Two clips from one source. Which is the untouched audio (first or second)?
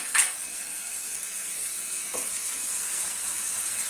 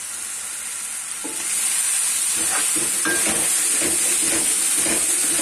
second